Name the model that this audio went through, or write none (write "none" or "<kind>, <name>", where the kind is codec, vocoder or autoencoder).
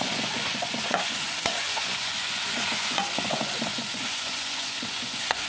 vocoder, Vocos